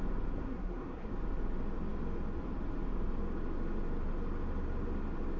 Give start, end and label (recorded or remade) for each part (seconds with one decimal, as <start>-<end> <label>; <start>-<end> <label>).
0.0-0.4 recorded; 0.4-1.1 remade; 1.1-5.4 recorded